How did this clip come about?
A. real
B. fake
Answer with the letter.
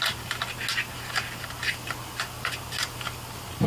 A